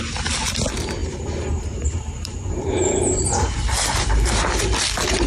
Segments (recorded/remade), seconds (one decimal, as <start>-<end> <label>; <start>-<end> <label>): 0.0-1.0 recorded; 1.0-4.2 remade; 4.2-5.3 recorded